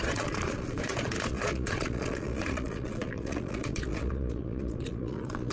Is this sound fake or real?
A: fake